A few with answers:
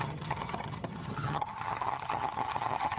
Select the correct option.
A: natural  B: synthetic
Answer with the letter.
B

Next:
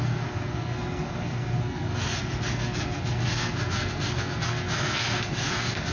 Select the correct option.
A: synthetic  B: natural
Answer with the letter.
A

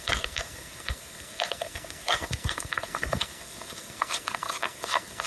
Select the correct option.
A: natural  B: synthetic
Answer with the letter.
B